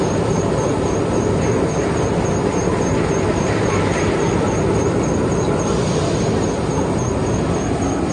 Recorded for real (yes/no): yes